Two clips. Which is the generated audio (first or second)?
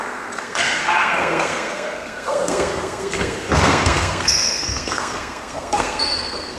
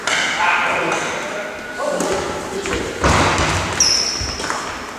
first